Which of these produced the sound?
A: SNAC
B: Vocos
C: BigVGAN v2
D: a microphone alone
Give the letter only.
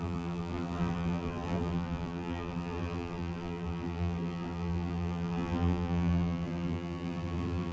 C